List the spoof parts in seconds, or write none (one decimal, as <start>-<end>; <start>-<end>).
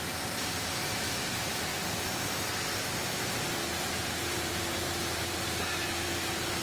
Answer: 0.0-1.7; 3.8-6.6